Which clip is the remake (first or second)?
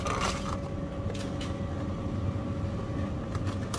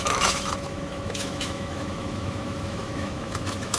second